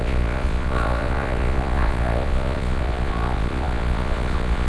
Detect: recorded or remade remade